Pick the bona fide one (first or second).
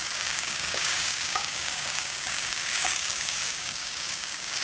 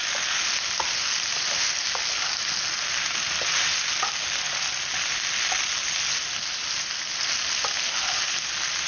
second